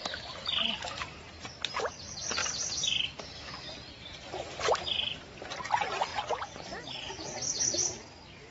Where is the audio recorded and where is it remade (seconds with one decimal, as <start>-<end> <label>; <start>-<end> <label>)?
0.0-8.5 recorded

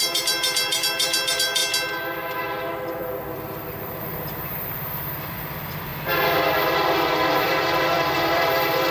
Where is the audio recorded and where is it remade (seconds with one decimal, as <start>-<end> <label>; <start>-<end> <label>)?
0.0-1.6 remade; 1.6-2.9 recorded; 2.9-5.9 remade; 5.9-7.3 recorded; 7.3-8.9 remade

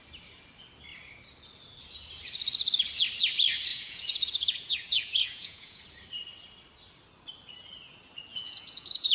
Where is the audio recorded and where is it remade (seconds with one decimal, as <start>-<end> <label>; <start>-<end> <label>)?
0.0-3.7 recorded; 3.7-5.8 remade; 5.8-8.3 recorded; 8.3-9.1 remade

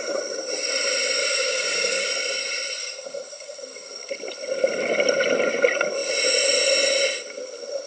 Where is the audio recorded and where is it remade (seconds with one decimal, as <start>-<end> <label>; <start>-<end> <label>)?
0.0-1.2 recorded; 1.2-2.1 remade; 2.1-2.8 recorded; 2.8-4.1 remade; 4.1-7.9 recorded

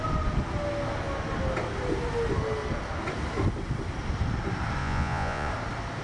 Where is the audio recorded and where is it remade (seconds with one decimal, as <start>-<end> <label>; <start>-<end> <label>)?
0.0-4.8 recorded; 4.8-5.5 remade; 5.5-6.0 recorded